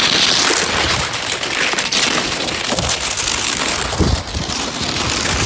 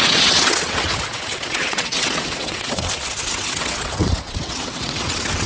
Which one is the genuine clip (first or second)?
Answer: first